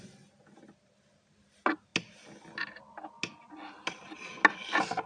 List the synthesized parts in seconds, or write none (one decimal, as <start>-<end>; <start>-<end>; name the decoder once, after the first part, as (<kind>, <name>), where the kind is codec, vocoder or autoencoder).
none